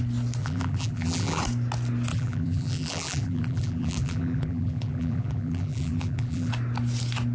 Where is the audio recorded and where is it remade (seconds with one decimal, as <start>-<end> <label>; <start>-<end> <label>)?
0.0-0.4 recorded; 0.4-1.4 remade; 1.4-2.1 recorded; 2.1-6.5 remade; 6.5-7.3 recorded